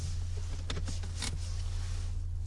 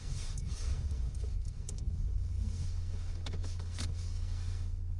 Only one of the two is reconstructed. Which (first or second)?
second